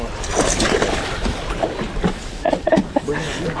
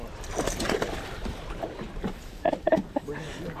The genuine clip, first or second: first